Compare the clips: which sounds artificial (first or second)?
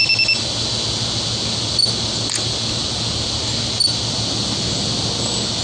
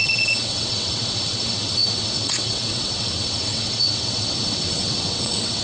second